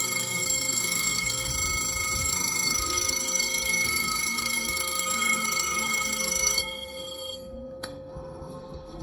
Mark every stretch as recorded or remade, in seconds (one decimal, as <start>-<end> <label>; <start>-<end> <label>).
0.0-1.5 remade; 1.5-2.2 recorded; 2.2-9.0 remade